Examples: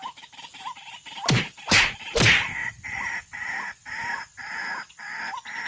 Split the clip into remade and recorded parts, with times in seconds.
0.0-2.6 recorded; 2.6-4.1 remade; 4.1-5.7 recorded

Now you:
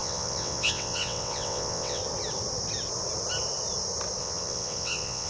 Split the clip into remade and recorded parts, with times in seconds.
0.0-2.0 remade; 2.0-4.2 recorded; 4.2-5.3 remade

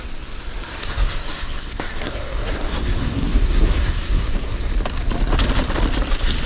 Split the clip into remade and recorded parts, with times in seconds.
0.0-0.8 recorded; 0.8-4.7 remade; 4.7-6.5 recorded

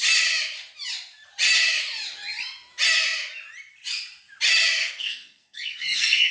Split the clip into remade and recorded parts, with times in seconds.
0.0-4.8 recorded; 4.8-6.3 remade